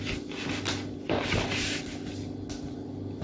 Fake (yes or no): no